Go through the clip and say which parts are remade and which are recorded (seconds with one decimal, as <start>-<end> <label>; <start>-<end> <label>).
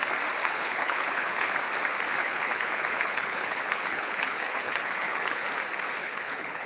0.0-0.4 recorded; 0.4-1.5 remade; 1.5-2.2 recorded; 2.2-5.5 remade; 5.5-6.0 recorded; 6.0-6.7 remade